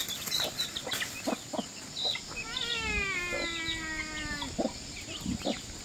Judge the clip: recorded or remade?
recorded